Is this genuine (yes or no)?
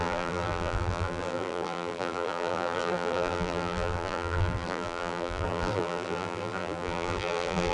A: no